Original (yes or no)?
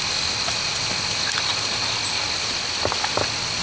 yes